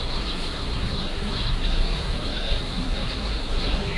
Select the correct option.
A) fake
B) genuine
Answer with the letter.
A